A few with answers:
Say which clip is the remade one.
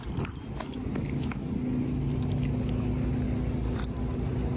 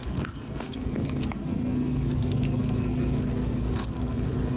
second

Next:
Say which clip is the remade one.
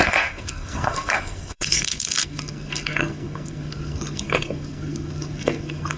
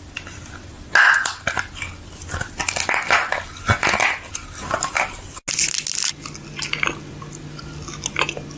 first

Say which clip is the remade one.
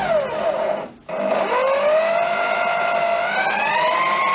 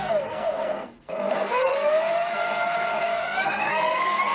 second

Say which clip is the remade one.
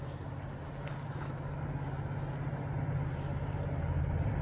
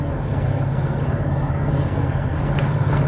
second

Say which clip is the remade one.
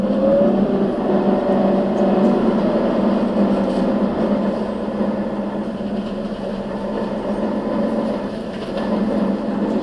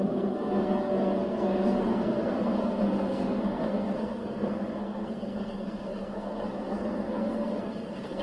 second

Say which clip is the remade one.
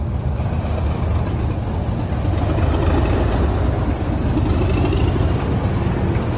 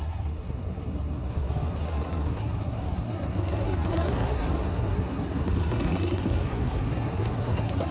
second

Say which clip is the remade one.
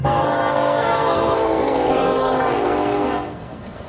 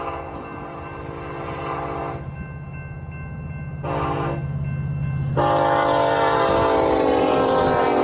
first